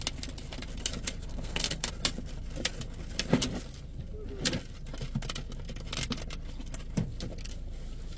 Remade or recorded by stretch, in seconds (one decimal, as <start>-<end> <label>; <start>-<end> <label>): 0.0-1.3 recorded; 1.3-1.9 remade; 1.9-8.2 recorded